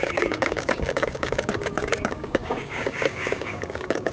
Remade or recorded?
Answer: remade